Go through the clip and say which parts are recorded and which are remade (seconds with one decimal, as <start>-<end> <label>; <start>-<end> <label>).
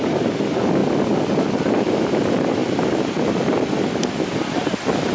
0.0-5.1 recorded